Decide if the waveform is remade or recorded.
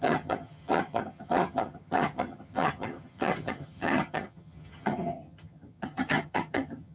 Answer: remade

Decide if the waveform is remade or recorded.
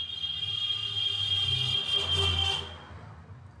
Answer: recorded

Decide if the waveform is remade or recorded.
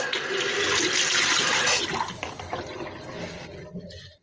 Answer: recorded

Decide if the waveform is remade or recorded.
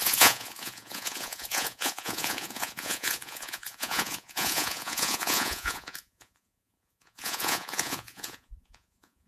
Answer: remade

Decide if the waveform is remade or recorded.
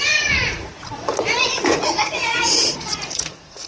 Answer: remade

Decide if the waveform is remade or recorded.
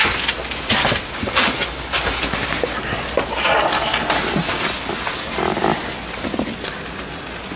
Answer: recorded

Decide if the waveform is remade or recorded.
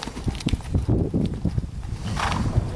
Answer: recorded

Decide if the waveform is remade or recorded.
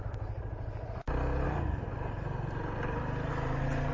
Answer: recorded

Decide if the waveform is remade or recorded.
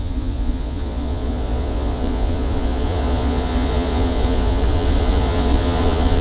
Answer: remade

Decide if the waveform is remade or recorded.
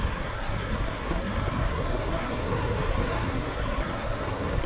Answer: remade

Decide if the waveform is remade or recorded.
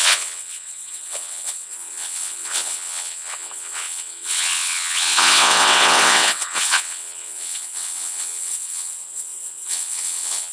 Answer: remade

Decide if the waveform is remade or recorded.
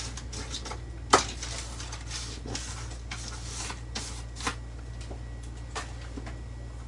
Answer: recorded